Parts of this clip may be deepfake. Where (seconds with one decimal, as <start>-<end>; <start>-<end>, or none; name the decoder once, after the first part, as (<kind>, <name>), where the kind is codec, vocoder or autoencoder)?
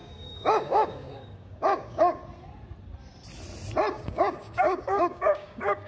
0.0-2.2 (codec, DAC); 3.9-5.9